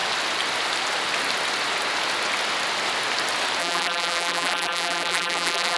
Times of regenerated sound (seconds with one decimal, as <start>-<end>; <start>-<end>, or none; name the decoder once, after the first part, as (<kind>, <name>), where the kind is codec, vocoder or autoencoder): 3.6-5.8 (vocoder, BigVGAN v2)